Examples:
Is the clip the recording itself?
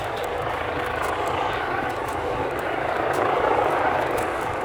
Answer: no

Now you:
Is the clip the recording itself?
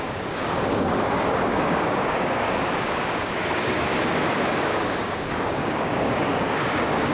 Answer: no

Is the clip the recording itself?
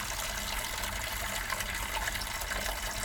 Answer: yes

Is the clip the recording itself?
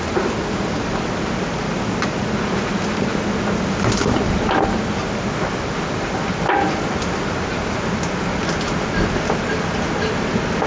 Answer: yes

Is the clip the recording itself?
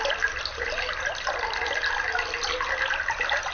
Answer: yes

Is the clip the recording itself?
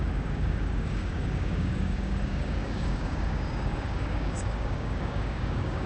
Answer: no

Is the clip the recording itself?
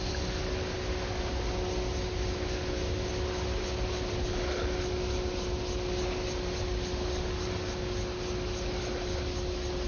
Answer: yes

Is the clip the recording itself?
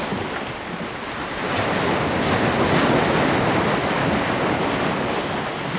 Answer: yes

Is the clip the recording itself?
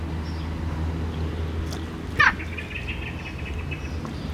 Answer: yes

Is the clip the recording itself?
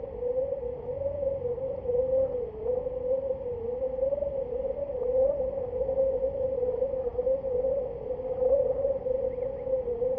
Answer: yes